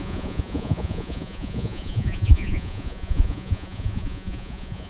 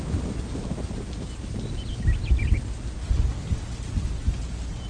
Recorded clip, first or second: second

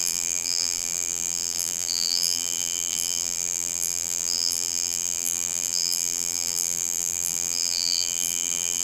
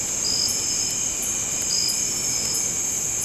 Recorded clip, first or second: second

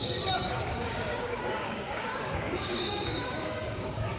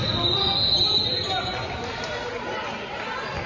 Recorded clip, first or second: second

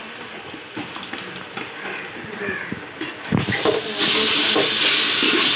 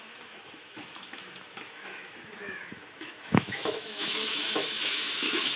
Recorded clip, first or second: first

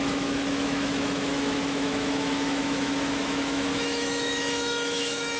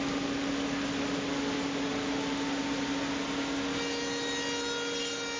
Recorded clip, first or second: second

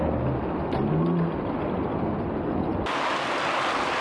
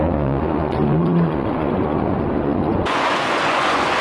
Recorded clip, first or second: first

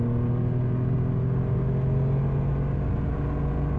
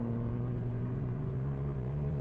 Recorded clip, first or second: first